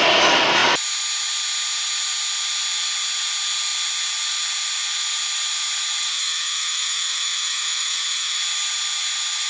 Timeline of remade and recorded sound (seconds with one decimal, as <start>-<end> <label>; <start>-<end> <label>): 0.0-6.1 recorded; 6.1-8.4 remade; 8.4-9.5 recorded

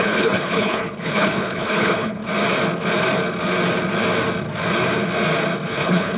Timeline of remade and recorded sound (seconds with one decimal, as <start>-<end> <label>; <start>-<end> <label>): 0.0-2.2 remade; 2.2-5.7 recorded; 5.7-6.2 remade

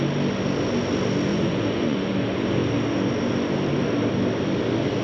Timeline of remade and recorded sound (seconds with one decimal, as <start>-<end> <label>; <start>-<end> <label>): 0.0-1.3 recorded; 1.3-2.1 remade; 2.1-5.0 recorded

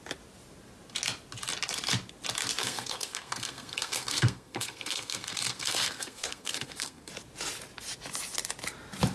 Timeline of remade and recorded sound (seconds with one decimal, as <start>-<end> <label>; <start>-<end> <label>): 0.0-2.6 recorded; 2.6-7.1 remade; 7.1-9.1 recorded

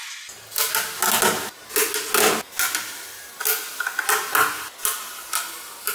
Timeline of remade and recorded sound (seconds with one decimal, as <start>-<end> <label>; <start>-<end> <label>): 0.0-5.9 recorded

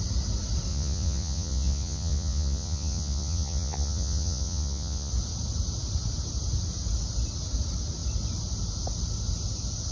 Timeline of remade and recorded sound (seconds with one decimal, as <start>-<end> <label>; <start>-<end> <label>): 0.0-0.7 recorded; 0.7-5.1 remade; 5.1-9.9 recorded

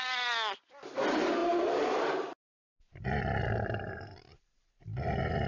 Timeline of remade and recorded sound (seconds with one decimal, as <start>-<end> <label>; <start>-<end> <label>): 0.0-1.4 recorded; 1.4-4.7 remade; 4.7-5.5 recorded

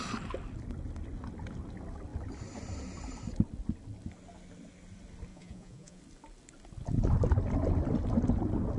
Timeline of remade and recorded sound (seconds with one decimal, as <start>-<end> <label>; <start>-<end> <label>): 0.0-5.3 recorded; 5.3-6.0 remade; 6.0-8.8 recorded